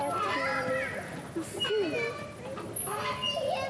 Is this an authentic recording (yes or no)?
yes